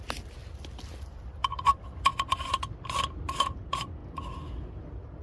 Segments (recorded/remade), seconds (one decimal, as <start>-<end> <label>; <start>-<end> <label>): 0.0-0.4 remade; 0.4-0.9 recorded; 0.9-2.1 remade; 2.1-2.7 recorded; 2.7-4.0 remade; 4.0-4.8 recorded; 4.8-5.2 remade